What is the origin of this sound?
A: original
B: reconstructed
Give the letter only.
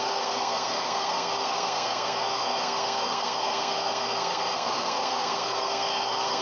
B